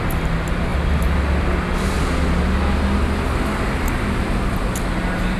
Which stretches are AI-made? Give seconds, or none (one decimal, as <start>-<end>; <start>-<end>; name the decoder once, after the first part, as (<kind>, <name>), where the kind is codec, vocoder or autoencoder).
none